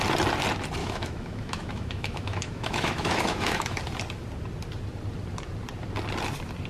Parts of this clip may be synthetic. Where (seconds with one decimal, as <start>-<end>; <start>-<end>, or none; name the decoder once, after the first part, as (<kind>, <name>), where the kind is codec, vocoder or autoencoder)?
0.8-3.8 (autoencoder, DAC-VAE)

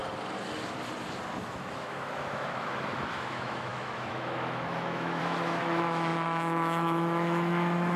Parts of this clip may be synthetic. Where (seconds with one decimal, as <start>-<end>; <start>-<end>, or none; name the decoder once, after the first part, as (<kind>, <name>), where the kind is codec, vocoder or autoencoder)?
1.4-8.0 (autoencoder, DAC-VAE)